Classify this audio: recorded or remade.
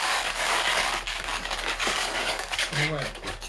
remade